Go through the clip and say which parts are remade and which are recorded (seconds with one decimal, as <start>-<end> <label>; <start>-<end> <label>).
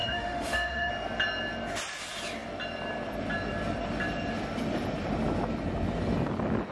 0.0-0.9 remade; 0.9-6.7 recorded